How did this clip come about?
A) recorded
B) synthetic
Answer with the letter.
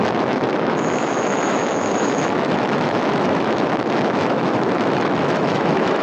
B